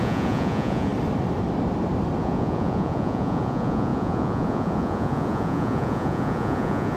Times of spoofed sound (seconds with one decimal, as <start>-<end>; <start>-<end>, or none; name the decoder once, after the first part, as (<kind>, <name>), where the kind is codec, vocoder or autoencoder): 0.0-0.9 (vocoder, Vocos); 2.2-7.0